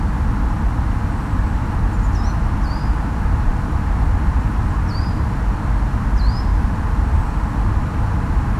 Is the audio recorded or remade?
recorded